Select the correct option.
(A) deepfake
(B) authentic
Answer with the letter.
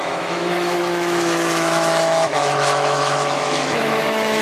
A